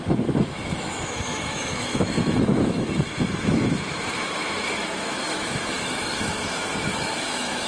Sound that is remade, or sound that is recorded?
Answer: remade